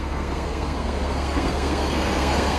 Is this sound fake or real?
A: fake